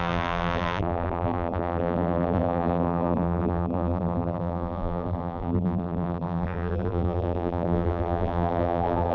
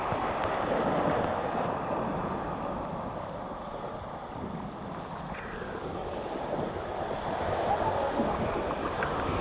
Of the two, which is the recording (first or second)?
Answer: second